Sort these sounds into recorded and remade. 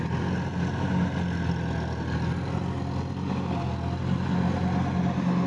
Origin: recorded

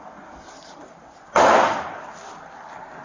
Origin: recorded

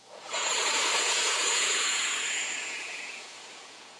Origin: remade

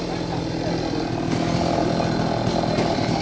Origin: recorded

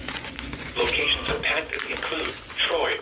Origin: remade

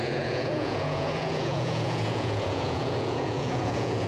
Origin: remade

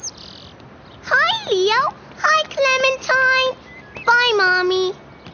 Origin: recorded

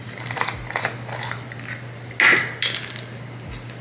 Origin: recorded